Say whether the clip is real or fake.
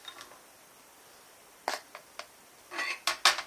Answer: real